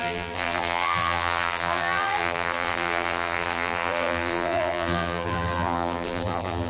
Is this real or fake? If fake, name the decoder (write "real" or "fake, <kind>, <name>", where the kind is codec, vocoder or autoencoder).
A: fake, vocoder, BigVGAN v2